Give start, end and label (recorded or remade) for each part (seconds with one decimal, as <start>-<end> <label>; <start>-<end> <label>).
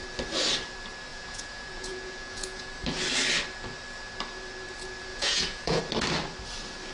0.0-1.1 recorded; 1.1-2.7 remade; 2.7-5.1 recorded; 5.1-5.8 remade; 5.8-6.9 recorded